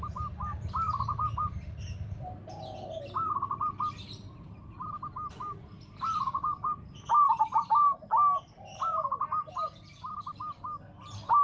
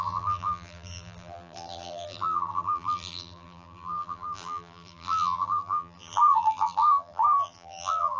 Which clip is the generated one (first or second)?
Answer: second